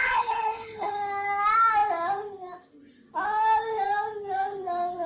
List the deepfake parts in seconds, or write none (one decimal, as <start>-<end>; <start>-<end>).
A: 0.0-0.9